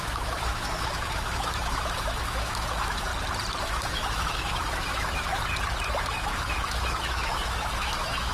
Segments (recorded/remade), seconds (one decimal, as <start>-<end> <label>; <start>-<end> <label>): 0.0-3.1 remade; 3.1-3.6 recorded; 3.6-5.4 remade; 5.4-5.9 recorded; 5.9-8.3 remade